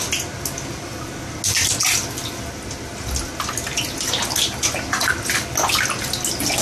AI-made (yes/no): no